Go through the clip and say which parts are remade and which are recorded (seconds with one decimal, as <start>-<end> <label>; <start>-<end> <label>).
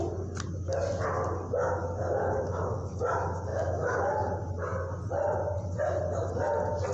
0.0-2.2 recorded; 2.2-3.0 remade; 3.0-3.5 recorded; 3.5-4.1 remade; 4.1-6.9 recorded